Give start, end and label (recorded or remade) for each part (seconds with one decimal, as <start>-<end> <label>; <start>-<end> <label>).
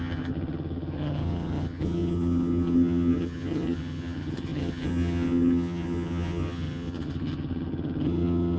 0.0-8.6 remade